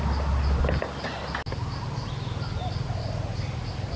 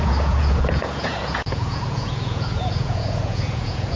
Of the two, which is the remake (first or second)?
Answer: second